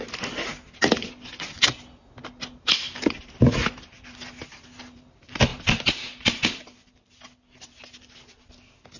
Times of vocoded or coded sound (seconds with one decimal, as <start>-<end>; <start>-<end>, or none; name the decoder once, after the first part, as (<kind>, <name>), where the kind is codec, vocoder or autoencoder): none